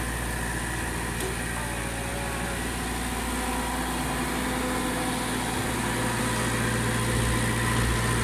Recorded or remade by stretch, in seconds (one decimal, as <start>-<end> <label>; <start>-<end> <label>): 0.0-8.2 recorded

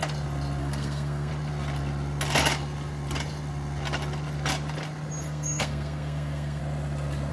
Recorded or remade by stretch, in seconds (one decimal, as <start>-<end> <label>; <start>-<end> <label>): 0.0-0.6 recorded; 0.6-1.3 remade; 1.3-5.2 recorded; 5.2-6.6 remade; 6.6-7.3 recorded

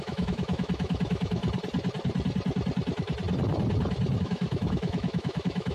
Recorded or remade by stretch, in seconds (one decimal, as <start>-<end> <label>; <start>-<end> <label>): 0.0-1.4 remade; 1.4-4.2 recorded; 4.2-5.7 remade

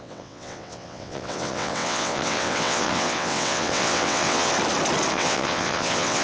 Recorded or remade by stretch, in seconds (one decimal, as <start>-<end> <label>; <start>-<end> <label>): 0.0-4.5 remade; 4.5-5.1 recorded; 5.1-6.2 remade

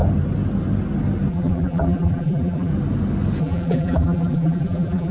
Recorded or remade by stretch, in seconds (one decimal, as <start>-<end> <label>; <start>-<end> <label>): 0.0-1.3 recorded; 1.3-2.7 remade; 2.7-3.4 recorded; 3.4-5.1 remade

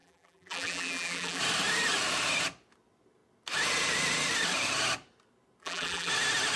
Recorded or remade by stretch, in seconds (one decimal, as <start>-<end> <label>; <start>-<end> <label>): 0.0-1.4 remade; 1.4-5.6 recorded; 5.6-6.1 remade; 6.1-6.6 recorded

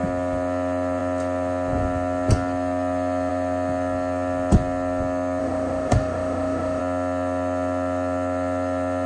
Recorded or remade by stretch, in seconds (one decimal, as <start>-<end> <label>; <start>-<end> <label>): 0.0-5.4 recorded; 5.4-6.8 remade; 6.8-9.1 recorded